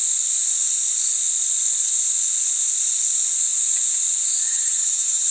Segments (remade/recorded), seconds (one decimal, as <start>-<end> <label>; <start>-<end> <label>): 0.0-4.5 recorded; 4.5-5.3 remade